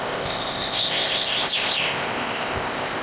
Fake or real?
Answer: fake